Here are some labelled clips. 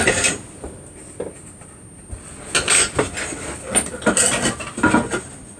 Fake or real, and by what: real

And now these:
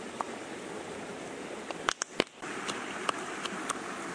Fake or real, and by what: real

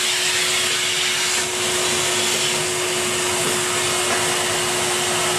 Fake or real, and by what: real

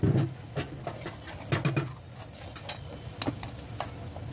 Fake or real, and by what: real